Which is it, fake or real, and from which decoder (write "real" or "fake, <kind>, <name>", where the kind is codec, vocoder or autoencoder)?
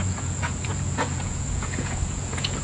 fake, vocoder, Vocos